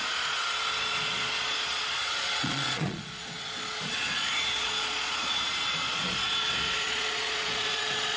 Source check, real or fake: fake